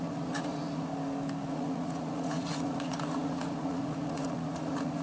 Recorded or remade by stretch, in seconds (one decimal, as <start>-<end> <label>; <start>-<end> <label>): 0.0-0.9 remade; 0.9-1.5 recorded; 1.5-5.0 remade